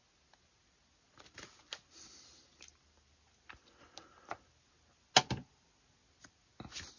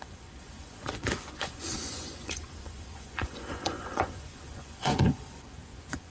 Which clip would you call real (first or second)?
first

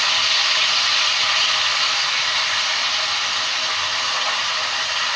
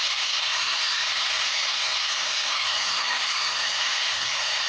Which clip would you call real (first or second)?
first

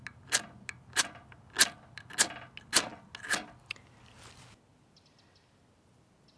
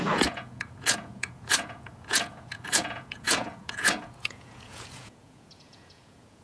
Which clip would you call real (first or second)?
first